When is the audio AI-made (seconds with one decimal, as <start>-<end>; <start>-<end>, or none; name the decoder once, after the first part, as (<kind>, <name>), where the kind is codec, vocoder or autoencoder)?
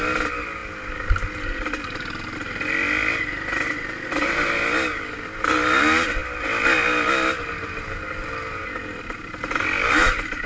none